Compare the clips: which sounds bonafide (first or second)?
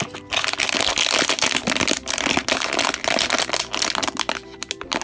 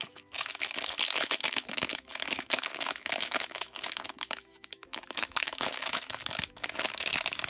first